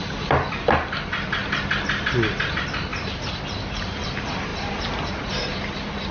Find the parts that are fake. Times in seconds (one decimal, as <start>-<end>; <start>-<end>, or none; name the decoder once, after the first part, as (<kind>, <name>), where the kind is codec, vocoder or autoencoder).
none